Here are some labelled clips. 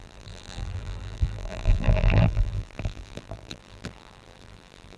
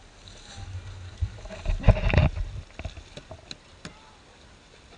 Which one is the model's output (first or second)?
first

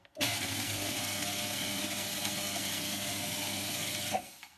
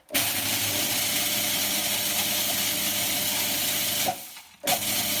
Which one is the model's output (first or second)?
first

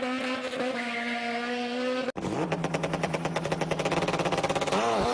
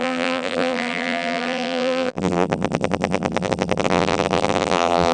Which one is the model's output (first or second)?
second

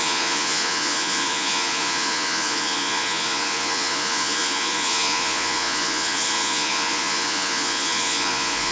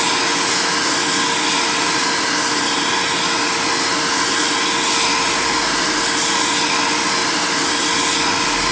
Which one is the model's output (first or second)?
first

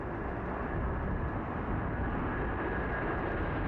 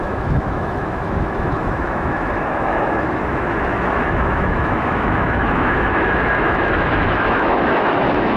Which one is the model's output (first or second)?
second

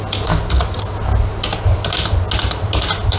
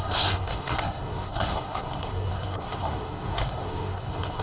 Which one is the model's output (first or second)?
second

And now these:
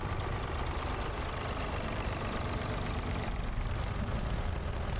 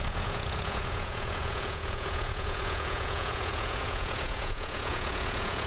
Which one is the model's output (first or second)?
second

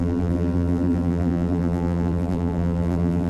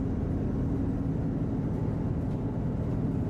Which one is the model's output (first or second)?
first